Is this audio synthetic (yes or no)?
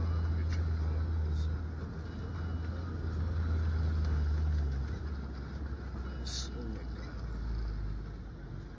no